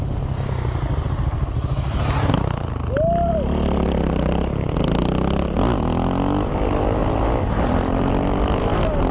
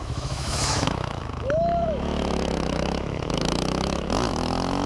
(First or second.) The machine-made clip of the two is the second